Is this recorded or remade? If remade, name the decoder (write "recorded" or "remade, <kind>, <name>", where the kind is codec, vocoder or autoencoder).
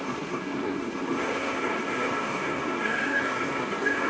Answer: remade, codec, SNAC